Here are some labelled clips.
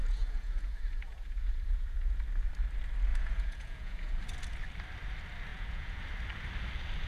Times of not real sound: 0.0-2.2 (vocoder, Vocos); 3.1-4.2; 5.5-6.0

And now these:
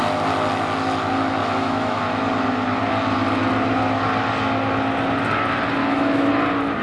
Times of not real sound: 1.4-2.0 (autoencoder, DAC-VAE); 5.8-6.3

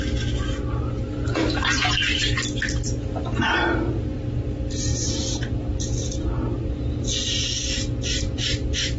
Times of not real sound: none

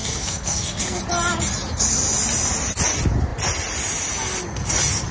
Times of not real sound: 0.0-1.0 (codec, SNAC)

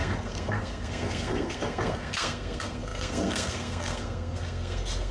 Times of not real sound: 0.0-5.1 (codec, SNAC)